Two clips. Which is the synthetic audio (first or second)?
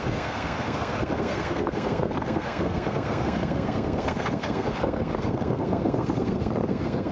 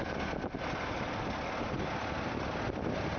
first